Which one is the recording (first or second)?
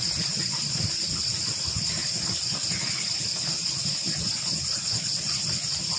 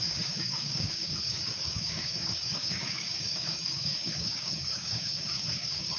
first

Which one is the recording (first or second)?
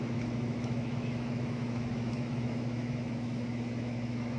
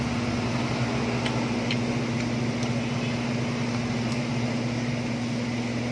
second